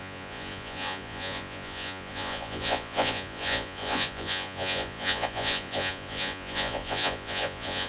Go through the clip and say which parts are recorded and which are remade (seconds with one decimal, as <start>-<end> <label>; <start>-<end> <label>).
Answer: 0.0-7.9 remade